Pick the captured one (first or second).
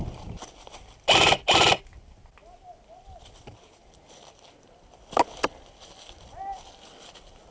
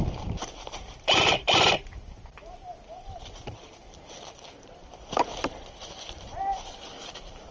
first